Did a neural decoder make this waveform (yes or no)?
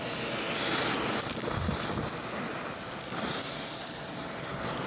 no